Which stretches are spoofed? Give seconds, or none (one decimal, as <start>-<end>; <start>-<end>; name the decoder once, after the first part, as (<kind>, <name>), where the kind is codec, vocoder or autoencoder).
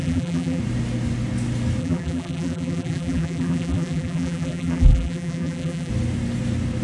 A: 0.0-0.6 (vocoder, BigVGAN v2); 1.8-5.9